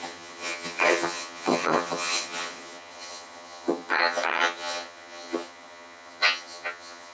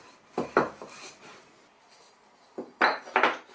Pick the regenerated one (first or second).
first